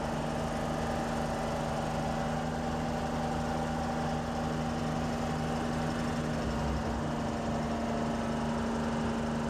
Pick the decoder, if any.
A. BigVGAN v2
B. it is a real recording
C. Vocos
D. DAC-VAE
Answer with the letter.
B